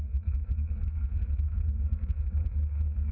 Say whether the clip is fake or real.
fake